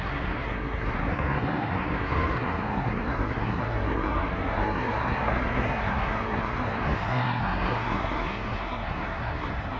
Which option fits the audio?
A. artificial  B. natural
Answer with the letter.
A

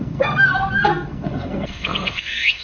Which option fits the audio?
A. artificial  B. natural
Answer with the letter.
A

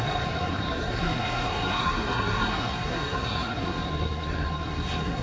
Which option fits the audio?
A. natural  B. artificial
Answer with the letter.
B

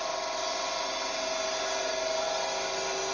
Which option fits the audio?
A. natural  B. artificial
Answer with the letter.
A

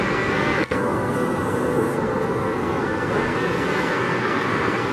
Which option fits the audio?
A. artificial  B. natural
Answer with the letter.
A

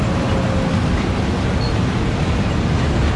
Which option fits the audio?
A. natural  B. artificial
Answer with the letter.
A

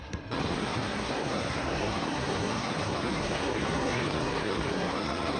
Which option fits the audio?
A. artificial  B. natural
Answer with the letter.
A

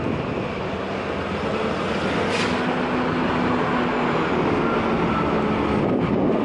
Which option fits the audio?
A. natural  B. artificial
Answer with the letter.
A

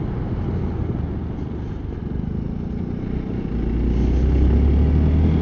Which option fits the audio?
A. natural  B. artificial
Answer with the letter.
A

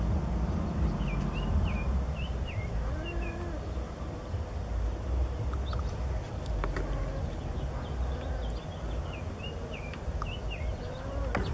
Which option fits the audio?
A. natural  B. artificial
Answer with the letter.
A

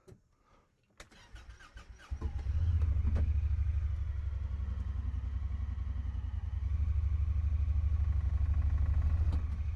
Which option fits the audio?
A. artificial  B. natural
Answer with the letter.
B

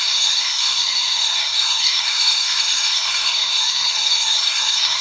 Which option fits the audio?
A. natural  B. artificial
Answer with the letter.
B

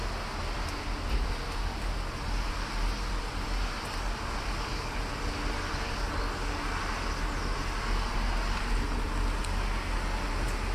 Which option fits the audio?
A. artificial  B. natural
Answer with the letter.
B